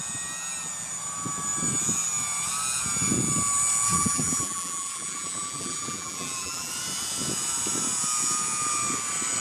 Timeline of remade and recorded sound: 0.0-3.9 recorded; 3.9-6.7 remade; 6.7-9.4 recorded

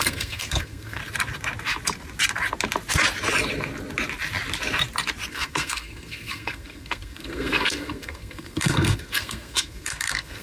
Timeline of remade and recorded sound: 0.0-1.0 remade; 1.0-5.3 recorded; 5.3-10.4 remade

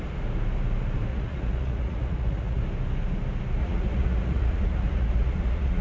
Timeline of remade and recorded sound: 0.0-1.1 recorded; 1.1-2.6 remade; 2.6-3.6 recorded; 3.6-5.8 remade

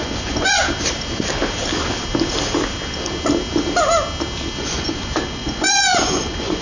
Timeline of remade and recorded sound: 0.0-0.6 remade; 0.6-4.6 recorded; 4.6-6.6 remade